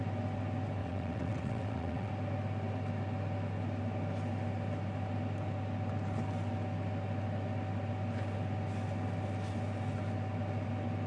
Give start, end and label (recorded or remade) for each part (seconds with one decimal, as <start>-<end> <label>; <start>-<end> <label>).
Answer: 0.0-0.8 recorded; 0.8-2.1 remade; 2.1-11.1 recorded